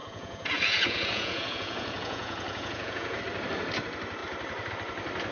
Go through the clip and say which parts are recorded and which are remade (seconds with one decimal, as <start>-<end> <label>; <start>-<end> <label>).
0.0-3.2 remade; 3.2-5.3 recorded